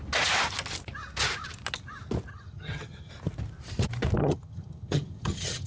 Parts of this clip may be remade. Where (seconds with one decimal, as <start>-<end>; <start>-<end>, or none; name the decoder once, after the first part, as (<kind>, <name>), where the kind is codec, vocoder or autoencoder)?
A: 2.3-3.1 (vocoder, HiFi-GAN); 4.2-5.7